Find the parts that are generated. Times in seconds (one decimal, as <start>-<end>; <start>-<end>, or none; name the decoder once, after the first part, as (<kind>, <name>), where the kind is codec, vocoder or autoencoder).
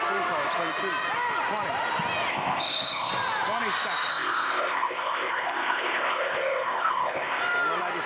2.3-3.1 (codec, ZipCodec); 4.1-7.4